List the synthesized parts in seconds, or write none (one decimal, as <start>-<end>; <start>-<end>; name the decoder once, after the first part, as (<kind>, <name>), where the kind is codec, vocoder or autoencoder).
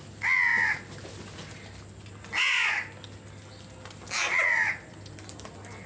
none